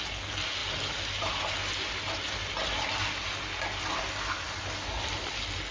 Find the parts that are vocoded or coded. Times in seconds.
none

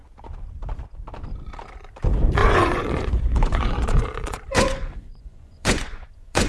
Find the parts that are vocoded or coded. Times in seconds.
2.4-6.5 (vocoder, Vocos)